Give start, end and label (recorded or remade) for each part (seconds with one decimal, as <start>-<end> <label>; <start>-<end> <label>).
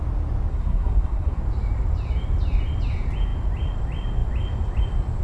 0.0-0.5 recorded; 0.5-1.4 remade; 1.4-5.2 recorded